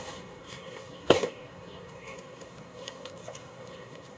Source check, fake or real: fake